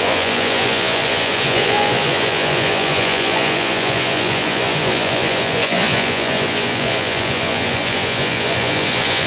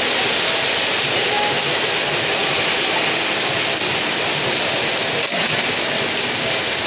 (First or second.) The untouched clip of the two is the second